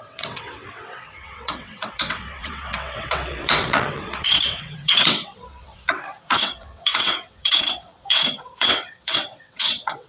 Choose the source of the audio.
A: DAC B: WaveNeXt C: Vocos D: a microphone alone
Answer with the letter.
B